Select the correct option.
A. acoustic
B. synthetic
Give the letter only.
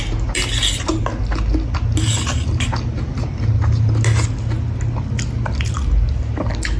A